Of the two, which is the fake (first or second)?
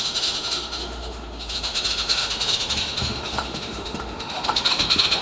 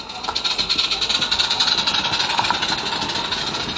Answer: first